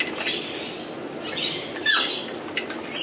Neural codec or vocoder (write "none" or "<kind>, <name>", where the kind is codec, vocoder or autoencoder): none